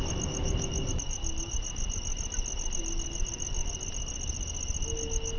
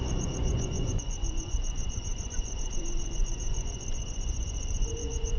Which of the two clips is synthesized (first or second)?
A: second